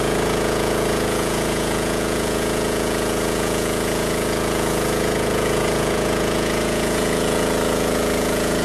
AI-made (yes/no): yes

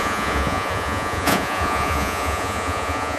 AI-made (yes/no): yes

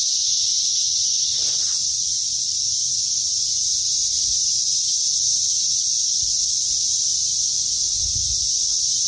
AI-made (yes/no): no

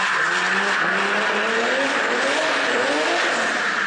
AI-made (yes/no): no